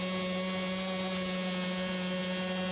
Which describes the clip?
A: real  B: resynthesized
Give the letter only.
A